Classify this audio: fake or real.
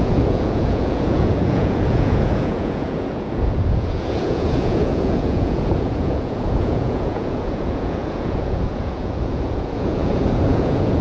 fake